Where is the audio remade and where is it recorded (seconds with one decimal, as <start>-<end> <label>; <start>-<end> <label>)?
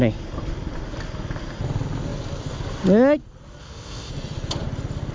0.0-3.6 recorded; 3.6-4.1 remade; 4.1-5.1 recorded